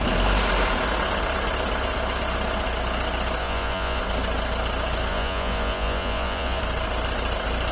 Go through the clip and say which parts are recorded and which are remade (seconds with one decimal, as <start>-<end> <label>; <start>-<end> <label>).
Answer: 0.0-3.4 recorded; 3.4-4.0 remade; 4.0-5.1 recorded; 5.1-6.6 remade; 6.6-7.7 recorded